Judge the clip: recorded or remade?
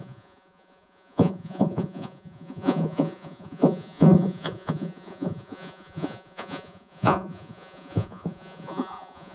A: remade